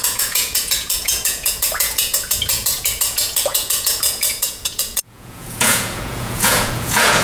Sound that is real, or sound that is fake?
fake